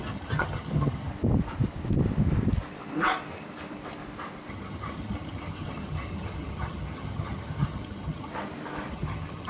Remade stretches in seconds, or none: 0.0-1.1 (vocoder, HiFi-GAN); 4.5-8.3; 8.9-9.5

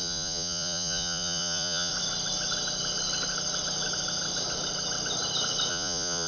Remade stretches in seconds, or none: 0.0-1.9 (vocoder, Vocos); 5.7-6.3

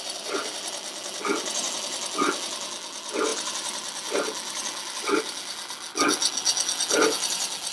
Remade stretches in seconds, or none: none

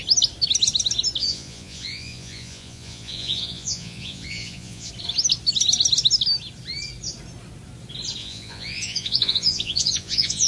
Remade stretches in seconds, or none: 1.2-4.9 (vocoder, Vocos); 8.2-10.5